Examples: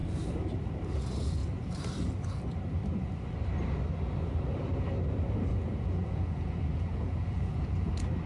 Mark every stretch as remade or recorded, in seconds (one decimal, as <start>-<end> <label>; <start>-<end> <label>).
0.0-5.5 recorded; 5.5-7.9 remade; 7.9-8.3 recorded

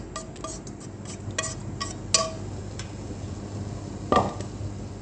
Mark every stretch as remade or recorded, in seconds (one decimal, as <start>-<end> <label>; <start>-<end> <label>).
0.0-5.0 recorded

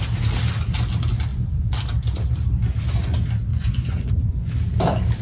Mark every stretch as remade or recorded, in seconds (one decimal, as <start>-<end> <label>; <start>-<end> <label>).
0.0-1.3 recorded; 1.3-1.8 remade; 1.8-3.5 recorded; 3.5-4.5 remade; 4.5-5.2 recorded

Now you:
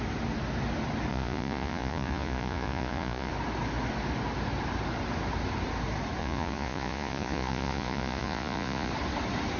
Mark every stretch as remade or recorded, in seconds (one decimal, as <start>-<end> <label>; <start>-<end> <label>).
0.0-1.1 recorded; 1.1-3.3 remade; 3.3-6.2 recorded; 6.2-8.9 remade; 8.9-9.6 recorded

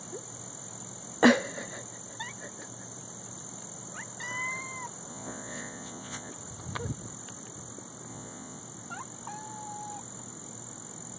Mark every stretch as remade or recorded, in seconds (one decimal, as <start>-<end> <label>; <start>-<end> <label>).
0.0-5.1 recorded; 5.1-6.3 remade; 6.3-8.1 recorded; 8.1-8.6 remade; 8.6-11.2 recorded